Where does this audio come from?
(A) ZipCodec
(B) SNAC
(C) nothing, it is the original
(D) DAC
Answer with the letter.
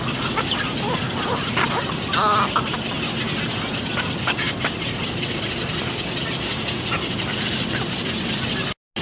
C